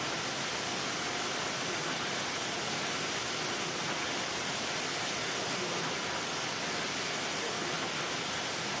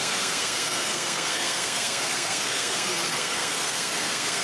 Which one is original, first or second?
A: first